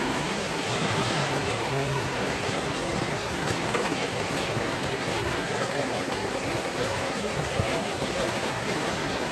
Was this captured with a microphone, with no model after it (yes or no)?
no